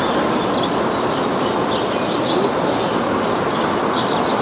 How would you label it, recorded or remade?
recorded